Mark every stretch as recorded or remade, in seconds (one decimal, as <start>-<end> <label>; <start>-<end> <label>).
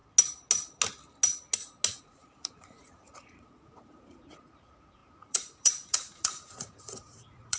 0.0-2.0 recorded; 2.0-7.6 remade